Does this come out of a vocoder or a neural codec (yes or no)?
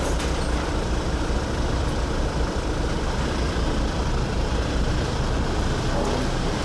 yes